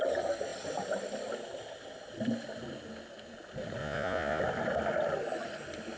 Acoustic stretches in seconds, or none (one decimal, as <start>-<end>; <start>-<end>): 0.0-3.8; 4.4-6.0